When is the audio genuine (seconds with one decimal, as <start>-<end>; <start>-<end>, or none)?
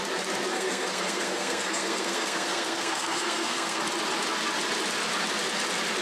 0.0-0.5; 3.8-6.0